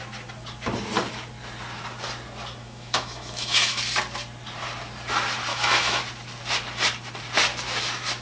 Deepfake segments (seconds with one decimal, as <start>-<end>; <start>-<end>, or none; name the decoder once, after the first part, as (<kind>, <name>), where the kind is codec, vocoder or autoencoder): 2.6-3.8 (autoencoder, DAC-VAE); 5.5-6.0